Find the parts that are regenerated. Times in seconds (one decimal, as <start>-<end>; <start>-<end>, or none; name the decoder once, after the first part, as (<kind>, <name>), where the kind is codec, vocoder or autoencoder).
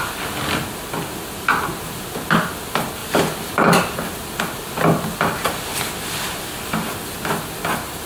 none